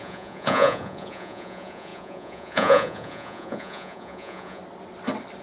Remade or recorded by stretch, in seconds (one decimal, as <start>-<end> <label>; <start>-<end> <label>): 0.0-4.6 remade; 4.6-5.4 recorded